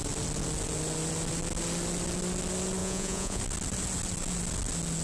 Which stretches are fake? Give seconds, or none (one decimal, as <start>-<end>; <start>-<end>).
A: 2.8-3.4